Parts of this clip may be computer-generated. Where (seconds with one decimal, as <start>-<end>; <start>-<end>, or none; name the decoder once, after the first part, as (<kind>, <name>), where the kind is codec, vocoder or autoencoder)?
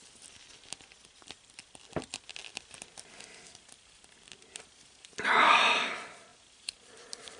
none